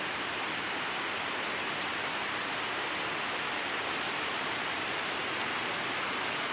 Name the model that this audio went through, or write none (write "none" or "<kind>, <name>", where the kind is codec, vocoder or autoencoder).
none